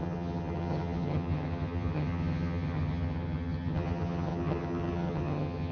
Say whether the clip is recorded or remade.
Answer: remade